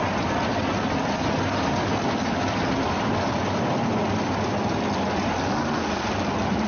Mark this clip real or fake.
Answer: real